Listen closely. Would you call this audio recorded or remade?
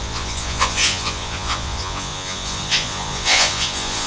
remade